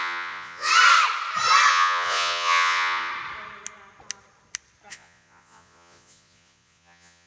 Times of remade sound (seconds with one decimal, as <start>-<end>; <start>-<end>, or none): 0.0-0.7; 1.7-3.1; 4.9-7.3